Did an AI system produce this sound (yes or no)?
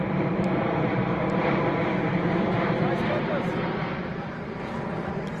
yes